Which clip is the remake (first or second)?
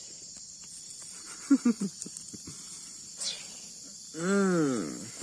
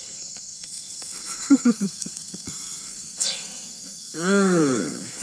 second